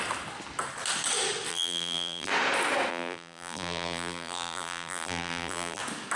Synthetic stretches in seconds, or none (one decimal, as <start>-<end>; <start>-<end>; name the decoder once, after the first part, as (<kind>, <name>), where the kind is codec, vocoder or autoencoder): 1.5-2.3 (vocoder, BigVGAN v2); 2.9-5.8